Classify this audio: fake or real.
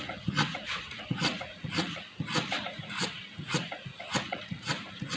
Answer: fake